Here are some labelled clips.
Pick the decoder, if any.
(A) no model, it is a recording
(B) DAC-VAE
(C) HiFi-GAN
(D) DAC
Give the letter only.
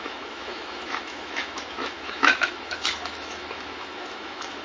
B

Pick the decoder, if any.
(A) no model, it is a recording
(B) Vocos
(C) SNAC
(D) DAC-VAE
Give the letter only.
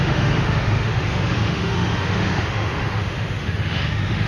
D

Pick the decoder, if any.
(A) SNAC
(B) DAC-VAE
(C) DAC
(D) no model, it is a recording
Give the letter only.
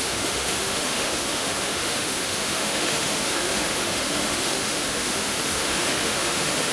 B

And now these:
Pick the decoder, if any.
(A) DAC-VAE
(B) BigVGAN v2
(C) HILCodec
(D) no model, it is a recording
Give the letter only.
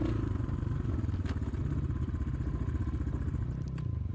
D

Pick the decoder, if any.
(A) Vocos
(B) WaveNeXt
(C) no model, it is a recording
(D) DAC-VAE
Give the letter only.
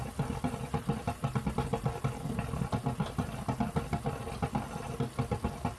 C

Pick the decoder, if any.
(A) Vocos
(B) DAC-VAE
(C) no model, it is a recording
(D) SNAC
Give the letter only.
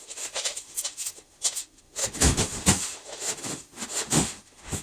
B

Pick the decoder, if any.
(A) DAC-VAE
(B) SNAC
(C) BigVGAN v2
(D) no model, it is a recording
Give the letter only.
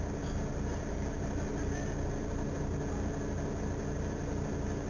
D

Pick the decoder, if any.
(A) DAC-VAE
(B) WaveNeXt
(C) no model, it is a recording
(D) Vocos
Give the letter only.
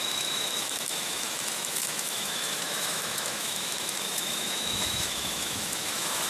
A